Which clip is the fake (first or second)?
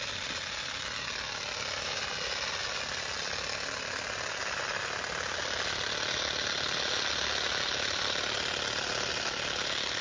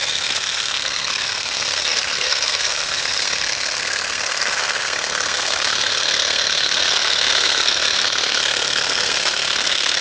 second